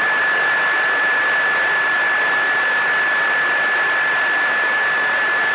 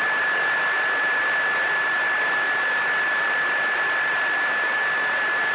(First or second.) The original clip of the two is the first